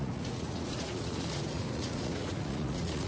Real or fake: fake